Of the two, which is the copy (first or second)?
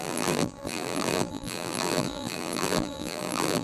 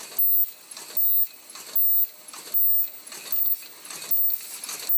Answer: first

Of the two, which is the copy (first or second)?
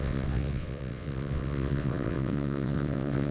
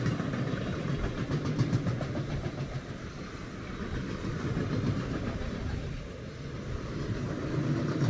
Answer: first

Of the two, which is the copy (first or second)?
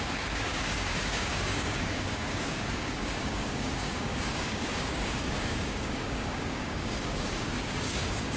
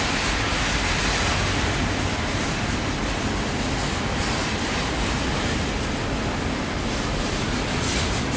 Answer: first